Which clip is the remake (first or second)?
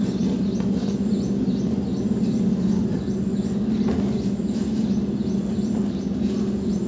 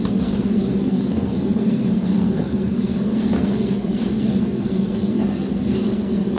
second